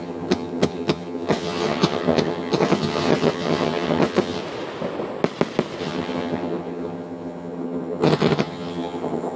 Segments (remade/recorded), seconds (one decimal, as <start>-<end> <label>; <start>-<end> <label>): 0.0-4.4 remade; 4.4-5.8 recorded; 5.8-9.4 remade